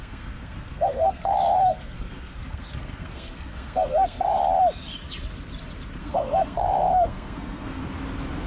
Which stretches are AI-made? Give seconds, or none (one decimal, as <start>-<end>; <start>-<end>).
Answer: 0.0-4.4; 6.0-7.8